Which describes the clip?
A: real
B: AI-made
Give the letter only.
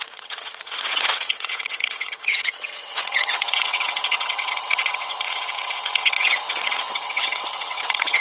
B